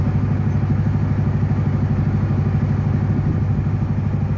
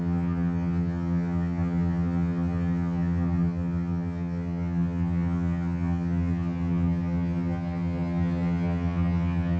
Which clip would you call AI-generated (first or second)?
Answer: second